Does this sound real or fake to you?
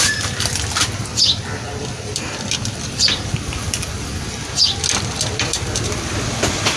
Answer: fake